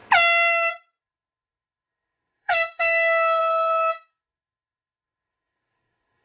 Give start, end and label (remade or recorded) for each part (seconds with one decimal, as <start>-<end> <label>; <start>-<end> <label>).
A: 0.0-1.0 recorded; 1.0-6.2 remade